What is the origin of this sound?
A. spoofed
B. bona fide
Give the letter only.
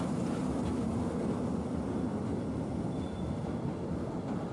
B